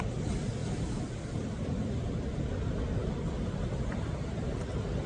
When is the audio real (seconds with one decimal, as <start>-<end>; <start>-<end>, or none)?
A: 0.0-0.6; 2.1-5.1